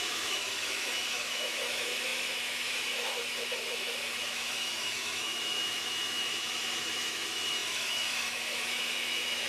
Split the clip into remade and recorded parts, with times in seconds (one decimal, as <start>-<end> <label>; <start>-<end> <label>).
0.0-9.5 remade